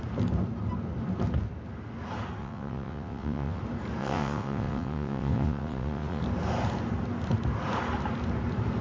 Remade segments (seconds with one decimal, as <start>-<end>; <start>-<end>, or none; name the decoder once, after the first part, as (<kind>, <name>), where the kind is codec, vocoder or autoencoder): 2.4-3.6 (vocoder, WaveNeXt); 4.0-6.2